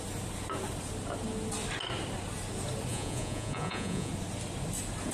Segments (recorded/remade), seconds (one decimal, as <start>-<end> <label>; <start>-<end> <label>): 0.0-2.9 recorded; 2.9-4.1 remade; 4.1-5.1 recorded